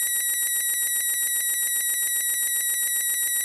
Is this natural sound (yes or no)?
yes